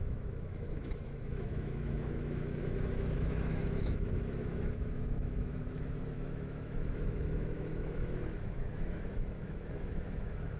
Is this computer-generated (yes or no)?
yes